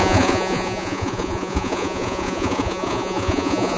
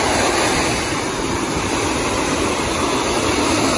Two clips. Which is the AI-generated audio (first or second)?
first